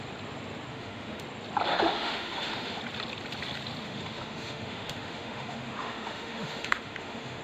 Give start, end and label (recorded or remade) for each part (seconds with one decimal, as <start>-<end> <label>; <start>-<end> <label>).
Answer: 0.0-0.7 recorded; 0.7-1.2 remade; 1.2-1.7 recorded; 1.7-2.8 remade; 2.8-3.8 recorded; 3.8-7.4 remade